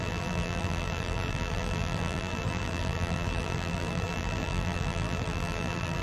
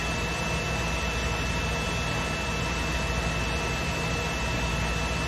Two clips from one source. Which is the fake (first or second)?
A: first